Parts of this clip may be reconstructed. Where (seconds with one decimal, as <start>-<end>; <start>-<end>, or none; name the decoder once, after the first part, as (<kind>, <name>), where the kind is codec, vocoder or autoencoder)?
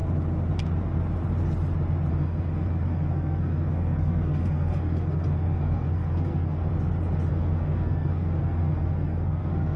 2.1-6.7 (codec, SNAC); 7.3-9.8